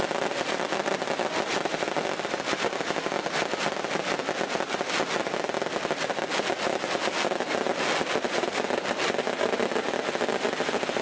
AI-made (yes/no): no